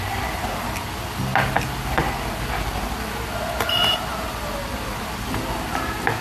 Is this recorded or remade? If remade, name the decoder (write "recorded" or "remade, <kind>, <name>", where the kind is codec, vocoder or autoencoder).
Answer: recorded